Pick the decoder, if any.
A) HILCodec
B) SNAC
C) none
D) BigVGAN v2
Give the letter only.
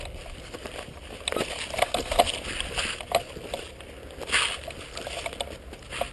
C